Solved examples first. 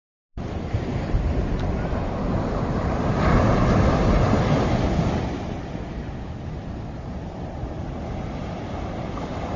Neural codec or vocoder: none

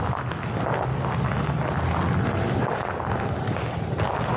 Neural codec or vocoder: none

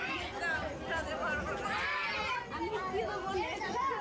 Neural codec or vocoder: none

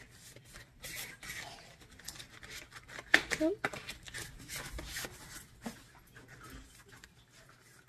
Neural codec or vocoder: none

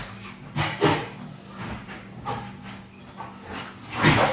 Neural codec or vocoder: none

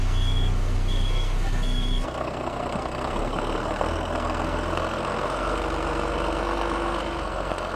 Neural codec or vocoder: codec, SNAC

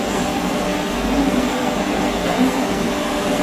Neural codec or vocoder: codec, SNAC